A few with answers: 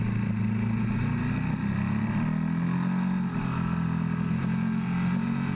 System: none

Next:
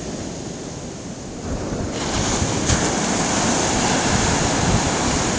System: none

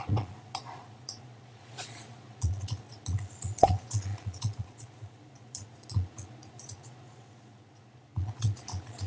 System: vocoder, Vocos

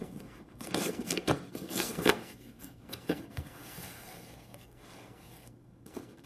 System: codec, SNAC